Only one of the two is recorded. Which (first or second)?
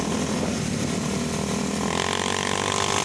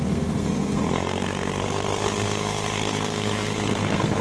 first